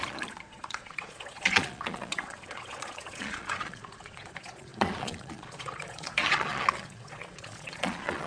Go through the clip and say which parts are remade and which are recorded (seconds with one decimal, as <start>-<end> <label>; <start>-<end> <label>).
0.0-8.3 remade